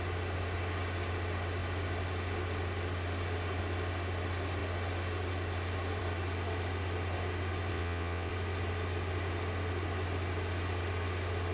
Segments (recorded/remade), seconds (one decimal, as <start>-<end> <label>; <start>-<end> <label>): 0.0-7.7 recorded; 7.7-8.3 remade; 8.3-11.5 recorded